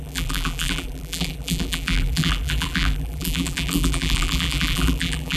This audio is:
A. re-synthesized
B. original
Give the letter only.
A